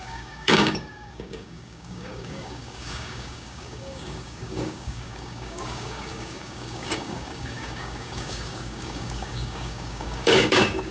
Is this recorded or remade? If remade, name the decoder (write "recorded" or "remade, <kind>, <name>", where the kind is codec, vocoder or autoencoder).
remade, codec, DAC